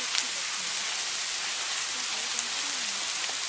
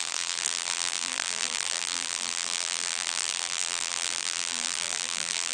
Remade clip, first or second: second